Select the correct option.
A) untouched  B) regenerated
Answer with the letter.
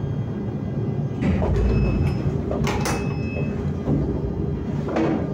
A